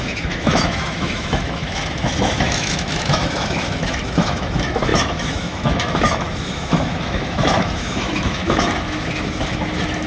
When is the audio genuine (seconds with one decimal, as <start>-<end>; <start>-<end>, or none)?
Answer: none